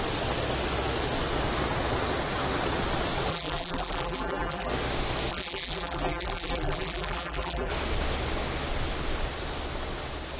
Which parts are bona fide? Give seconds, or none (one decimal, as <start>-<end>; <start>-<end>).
0.0-3.3; 4.7-5.3; 7.7-10.4